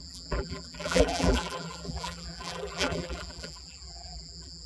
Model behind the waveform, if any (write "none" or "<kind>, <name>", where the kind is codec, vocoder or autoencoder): vocoder, BigVGAN v2